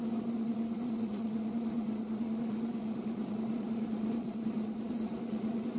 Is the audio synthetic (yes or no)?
yes